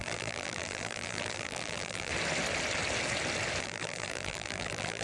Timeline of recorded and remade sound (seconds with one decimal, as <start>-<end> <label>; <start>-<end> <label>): 0.0-2.1 remade; 2.1-3.6 recorded; 3.6-5.0 remade